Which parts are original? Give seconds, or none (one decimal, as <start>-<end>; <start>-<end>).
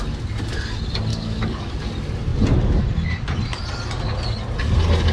0.0-1.1; 1.7-5.1